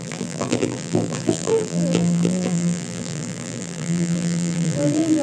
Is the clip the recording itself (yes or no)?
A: no